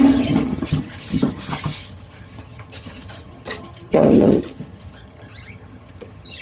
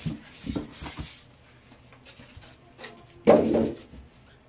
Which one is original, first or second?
second